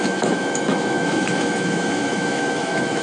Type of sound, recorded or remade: remade